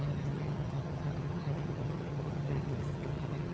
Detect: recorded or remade remade